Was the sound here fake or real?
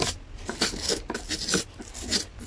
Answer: real